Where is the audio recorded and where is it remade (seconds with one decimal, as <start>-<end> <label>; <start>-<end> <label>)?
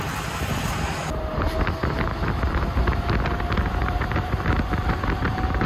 0.0-5.7 recorded